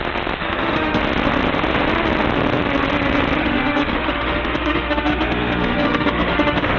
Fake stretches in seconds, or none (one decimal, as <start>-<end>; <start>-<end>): 0.4-1.0; 3.4-6.8